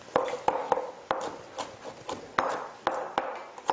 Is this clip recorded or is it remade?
recorded